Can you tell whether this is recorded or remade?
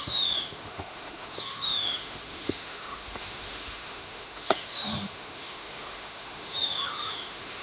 remade